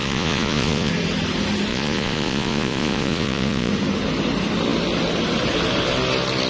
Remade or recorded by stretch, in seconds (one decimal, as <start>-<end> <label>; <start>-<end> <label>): 0.0-0.9 remade; 0.9-1.7 recorded; 1.7-3.7 remade; 3.7-6.5 recorded

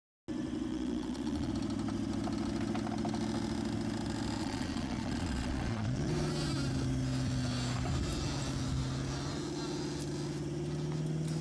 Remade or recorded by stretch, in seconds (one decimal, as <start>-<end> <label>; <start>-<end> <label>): 0.0-0.7 recorded; 0.7-1.5 remade; 1.5-4.4 recorded; 4.4-6.1 remade; 6.1-11.4 recorded

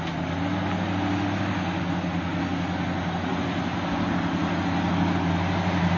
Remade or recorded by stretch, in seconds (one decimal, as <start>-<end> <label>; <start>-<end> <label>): 0.0-6.0 recorded

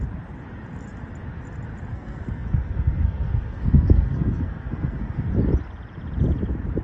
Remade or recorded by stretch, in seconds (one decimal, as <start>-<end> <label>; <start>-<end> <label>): 0.0-1.9 recorded; 1.9-5.3 remade; 5.3-6.8 recorded